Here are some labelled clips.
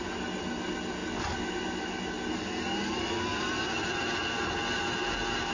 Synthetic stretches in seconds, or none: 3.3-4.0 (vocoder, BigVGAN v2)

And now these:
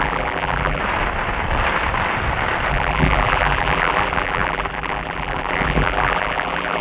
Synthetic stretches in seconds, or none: 0.0-0.8 (vocoder, BigVGAN v2); 2.7-6.8

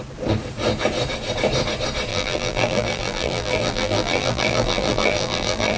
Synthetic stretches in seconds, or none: 2.1-5.8 (vocoder, BigVGAN v2)

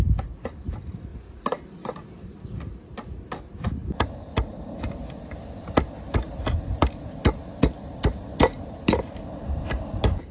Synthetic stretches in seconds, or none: 1.1-1.8 (vocoder, BigVGAN v2)

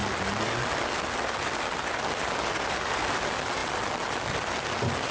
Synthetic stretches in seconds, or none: 2.2-3.6 (vocoder, BigVGAN v2)

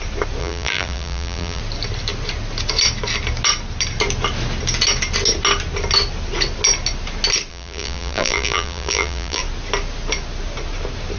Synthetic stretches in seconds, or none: 0.4-1.6 (vocoder, BigVGAN v2); 7.5-9.4

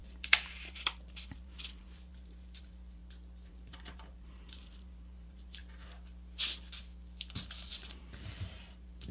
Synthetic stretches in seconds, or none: 0.0-3.0 (vocoder, BigVGAN v2); 3.5-5.6; 7.7-9.1